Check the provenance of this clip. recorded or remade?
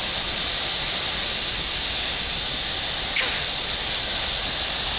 recorded